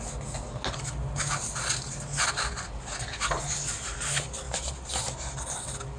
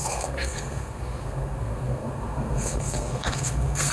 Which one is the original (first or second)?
first